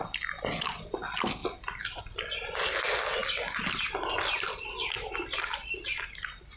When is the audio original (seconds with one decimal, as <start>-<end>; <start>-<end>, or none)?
0.0-6.6

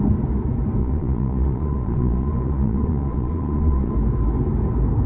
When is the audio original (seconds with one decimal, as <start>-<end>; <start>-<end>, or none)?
0.0-0.8; 3.9-5.1

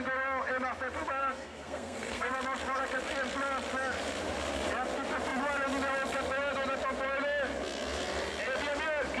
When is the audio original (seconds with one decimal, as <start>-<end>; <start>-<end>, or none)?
0.0-1.2; 2.3-9.2

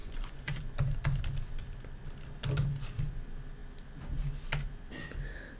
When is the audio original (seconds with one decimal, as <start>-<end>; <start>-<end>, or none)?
0.6-5.6